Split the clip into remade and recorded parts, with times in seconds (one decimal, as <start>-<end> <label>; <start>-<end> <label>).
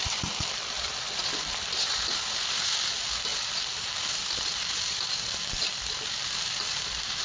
0.0-1.4 remade; 1.4-3.3 recorded; 3.3-7.2 remade